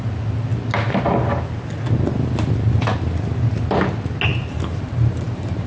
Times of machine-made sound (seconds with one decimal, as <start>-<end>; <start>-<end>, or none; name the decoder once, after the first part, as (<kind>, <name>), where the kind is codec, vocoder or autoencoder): 4.3-5.7 (vocoder, BigVGAN v2)